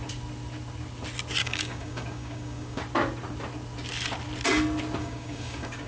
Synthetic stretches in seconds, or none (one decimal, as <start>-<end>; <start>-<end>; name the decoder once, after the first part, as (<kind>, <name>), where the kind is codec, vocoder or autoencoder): 1.4-2.8 (codec, DAC); 5.0-5.9